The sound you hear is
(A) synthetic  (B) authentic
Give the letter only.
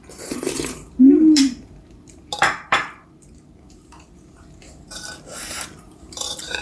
A